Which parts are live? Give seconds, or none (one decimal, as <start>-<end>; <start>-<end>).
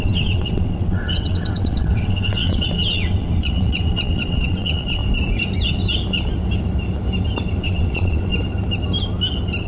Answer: 5.0-7.6; 8.3-9.7